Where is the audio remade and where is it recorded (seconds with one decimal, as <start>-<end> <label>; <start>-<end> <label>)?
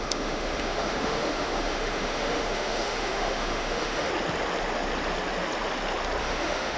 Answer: 0.0-4.1 remade; 4.1-6.2 recorded; 6.2-6.8 remade